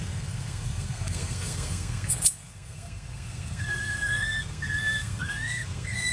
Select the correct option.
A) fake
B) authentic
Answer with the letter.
A